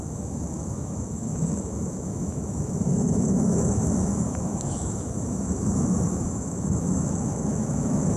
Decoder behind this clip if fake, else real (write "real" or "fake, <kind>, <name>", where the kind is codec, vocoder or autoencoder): fake, autoencoder, DAC-VAE